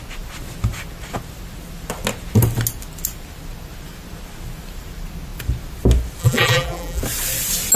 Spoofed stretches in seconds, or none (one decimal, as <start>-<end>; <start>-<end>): 6.2-7.0